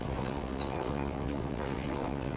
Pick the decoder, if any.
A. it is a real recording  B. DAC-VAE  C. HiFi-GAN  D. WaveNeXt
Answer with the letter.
D